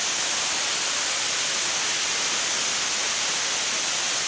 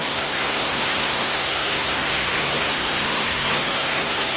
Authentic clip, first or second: first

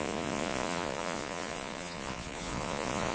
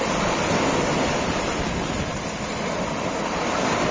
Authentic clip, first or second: second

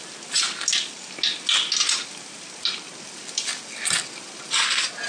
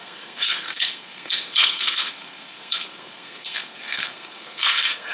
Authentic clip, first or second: first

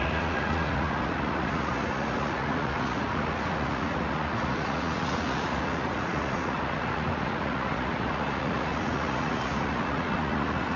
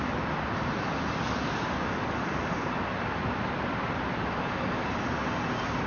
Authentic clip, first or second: second